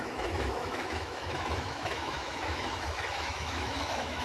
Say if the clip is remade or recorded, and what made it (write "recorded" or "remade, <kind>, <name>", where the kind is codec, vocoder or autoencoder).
remade, autoencoder, DAC-VAE